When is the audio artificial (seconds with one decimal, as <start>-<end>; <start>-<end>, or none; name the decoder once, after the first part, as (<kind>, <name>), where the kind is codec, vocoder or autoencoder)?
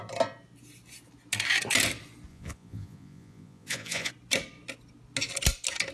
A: 2.3-4.1 (vocoder, Vocos)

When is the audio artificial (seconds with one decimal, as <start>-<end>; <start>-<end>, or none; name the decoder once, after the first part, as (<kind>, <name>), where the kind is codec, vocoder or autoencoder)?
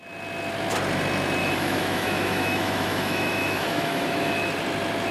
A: 1.4-4.5 (autoencoder, DAC-VAE)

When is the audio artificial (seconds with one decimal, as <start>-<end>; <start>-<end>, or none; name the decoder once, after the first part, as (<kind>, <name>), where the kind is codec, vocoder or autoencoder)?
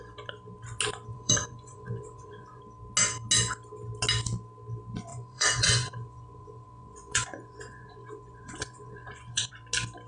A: 1.1-2.6 (vocoder, Vocos); 5.1-9.5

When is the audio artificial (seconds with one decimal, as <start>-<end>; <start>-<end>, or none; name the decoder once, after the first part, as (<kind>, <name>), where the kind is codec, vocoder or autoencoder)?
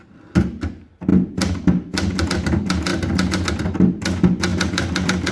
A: 2.9-3.5 (vocoder, BigVGAN v2); 4.5-5.3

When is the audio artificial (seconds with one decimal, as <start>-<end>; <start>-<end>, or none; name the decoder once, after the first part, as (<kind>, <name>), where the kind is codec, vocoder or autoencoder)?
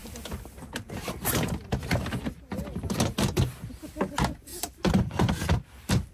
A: 4.5-5.3 (vocoder, BigVGAN v2)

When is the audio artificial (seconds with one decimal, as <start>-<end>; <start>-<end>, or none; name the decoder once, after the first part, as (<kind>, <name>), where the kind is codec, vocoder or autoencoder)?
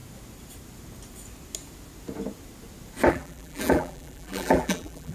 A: 3.1-5.1 (vocoder, BigVGAN v2)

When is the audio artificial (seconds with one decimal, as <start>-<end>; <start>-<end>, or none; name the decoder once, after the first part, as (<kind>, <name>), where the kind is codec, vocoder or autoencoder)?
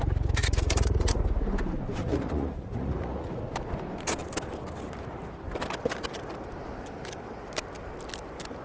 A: 0.4-1.2 (vocoder, Vocos); 2.0-3.4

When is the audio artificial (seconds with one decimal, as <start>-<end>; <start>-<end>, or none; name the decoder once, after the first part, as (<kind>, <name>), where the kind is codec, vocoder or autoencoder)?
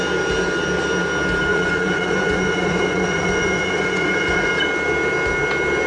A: 1.5-4.5 (vocoder, Vocos)